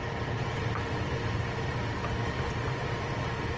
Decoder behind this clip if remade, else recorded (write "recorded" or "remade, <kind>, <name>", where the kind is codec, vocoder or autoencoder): recorded